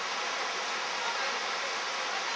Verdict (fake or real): real